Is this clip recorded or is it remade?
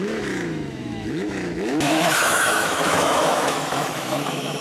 remade